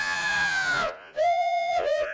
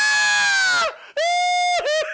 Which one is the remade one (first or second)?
first